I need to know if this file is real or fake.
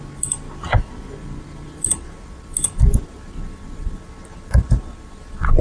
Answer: fake